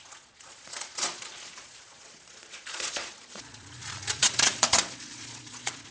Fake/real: fake